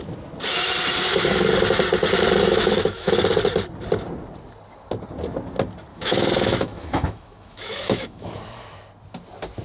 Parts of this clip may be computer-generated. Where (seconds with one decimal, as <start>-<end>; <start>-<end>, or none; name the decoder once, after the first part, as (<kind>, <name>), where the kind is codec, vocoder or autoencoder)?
2.4-3.1 (autoencoder, DAC-VAE); 5.9-8.4